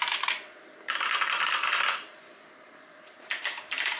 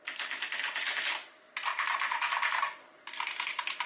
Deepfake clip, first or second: first